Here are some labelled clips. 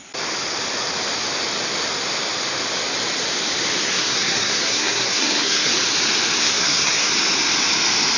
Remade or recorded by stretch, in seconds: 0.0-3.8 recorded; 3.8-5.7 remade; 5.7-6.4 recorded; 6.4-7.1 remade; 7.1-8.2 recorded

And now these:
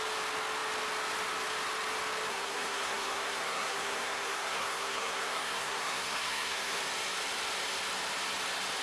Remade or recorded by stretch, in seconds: 0.0-2.3 recorded; 2.3-6.8 remade; 6.8-8.8 recorded

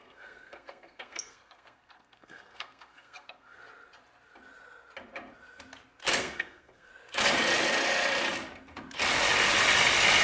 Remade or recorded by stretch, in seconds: 0.0-3.6 remade; 3.6-6.2 recorded; 6.2-6.9 remade; 6.9-10.2 recorded

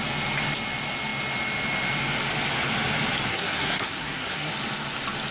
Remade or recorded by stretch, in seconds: 0.0-3.3 recorded; 3.3-4.5 remade; 4.5-5.3 recorded